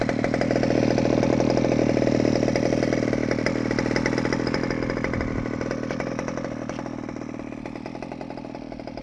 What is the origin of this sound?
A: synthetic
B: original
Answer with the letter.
B